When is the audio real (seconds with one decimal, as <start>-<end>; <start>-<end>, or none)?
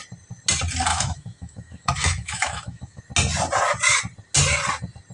0.0-0.9; 3.0-5.1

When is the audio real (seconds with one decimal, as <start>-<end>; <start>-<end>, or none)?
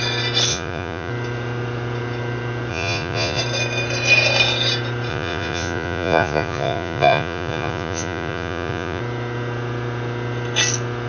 0.0-0.5; 1.1-2.7; 3.4-5.1; 9.0-11.1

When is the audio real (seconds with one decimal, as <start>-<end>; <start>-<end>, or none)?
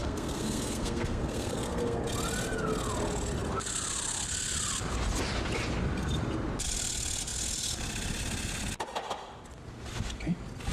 2.0-10.7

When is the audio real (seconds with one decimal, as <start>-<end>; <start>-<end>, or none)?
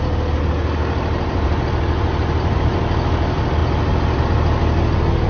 0.0-5.3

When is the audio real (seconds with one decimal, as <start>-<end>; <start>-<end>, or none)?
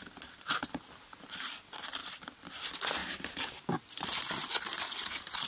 0.0-5.5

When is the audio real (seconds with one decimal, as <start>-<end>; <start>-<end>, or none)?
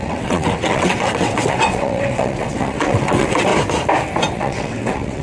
3.5-4.3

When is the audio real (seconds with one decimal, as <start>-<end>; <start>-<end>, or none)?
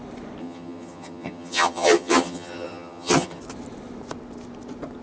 0.0-0.4; 3.4-5.0